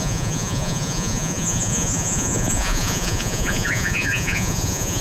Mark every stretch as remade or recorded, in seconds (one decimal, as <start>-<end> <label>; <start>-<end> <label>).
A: 0.0-5.0 remade